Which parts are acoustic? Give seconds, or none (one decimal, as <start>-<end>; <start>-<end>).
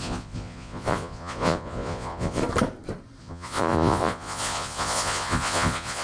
2.4-3.2